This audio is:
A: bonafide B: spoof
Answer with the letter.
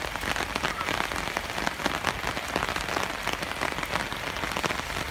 A